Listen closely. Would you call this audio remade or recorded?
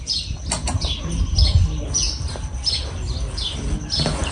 recorded